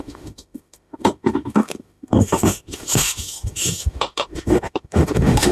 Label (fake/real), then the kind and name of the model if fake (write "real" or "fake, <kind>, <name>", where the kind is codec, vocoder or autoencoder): fake, autoencoder, DAC-VAE